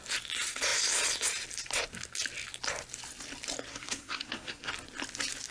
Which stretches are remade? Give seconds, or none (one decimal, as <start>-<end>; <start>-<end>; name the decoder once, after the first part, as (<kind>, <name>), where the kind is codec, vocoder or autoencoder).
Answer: 3.7-4.7 (codec, SNAC)